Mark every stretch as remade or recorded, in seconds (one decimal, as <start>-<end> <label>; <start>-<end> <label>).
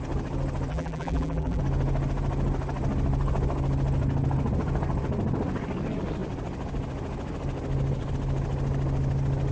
0.0-0.7 recorded; 0.7-1.6 remade; 1.6-9.5 recorded